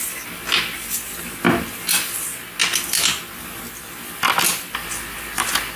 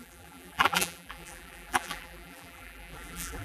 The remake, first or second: second